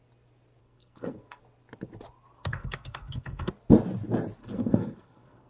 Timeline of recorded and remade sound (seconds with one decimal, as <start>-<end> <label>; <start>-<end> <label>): 0.0-0.6 recorded; 0.6-1.4 remade; 1.4-2.4 recorded; 2.4-3.5 remade; 3.5-4.4 recorded; 4.4-5.5 remade